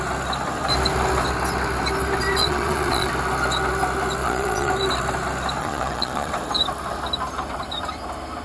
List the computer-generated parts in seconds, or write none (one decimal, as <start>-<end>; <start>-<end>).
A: 2.4-3.1; 4.2-4.7; 5.6-6.3